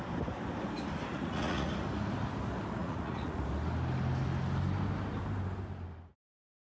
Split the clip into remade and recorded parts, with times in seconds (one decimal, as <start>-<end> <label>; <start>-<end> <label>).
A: 0.0-1.1 recorded; 1.1-1.7 remade; 1.7-2.8 recorded; 2.8-3.4 remade; 3.4-6.6 recorded